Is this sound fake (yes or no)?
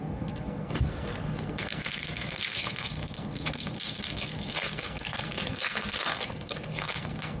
yes